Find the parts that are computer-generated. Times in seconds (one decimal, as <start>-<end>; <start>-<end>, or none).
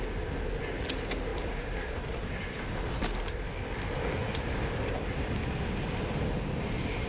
1.3-2.9; 4.2-5.1